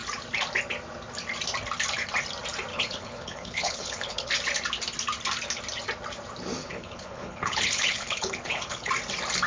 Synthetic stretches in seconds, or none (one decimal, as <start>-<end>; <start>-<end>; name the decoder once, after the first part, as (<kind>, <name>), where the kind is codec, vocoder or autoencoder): 2.7-4.3 (codec, HILCodec); 6.6-8.9